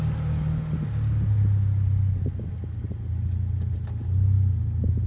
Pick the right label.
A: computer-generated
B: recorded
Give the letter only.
B